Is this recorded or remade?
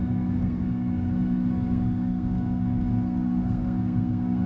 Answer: remade